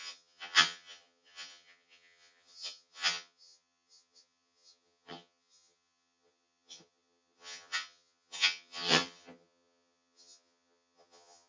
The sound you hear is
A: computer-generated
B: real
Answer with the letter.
A